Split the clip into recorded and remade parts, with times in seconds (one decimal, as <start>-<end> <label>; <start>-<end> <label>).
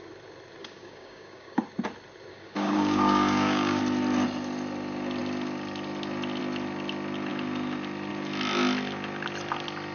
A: 0.0-0.6 recorded; 0.6-1.6 remade; 1.6-2.3 recorded; 2.3-3.8 remade; 3.8-9.9 recorded